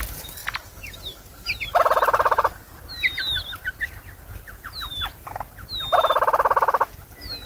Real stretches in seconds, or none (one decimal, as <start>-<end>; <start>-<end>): 0.0-7.5